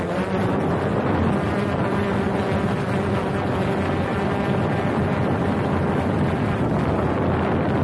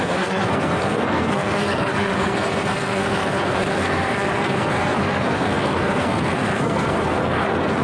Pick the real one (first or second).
first